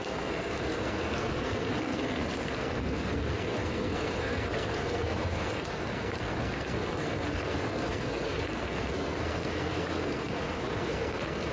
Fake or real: fake